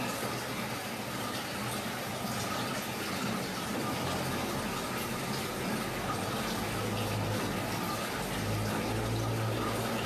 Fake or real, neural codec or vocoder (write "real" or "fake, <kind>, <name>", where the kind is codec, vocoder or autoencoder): real